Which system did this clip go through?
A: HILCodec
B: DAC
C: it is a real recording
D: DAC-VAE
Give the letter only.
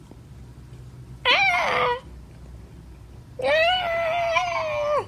C